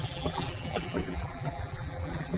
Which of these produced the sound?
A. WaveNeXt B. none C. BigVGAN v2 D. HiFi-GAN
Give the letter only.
C